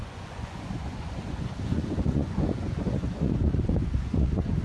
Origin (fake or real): fake